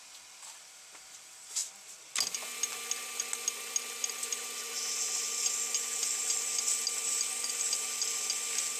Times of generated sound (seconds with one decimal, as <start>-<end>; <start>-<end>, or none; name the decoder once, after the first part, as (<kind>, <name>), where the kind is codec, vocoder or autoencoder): none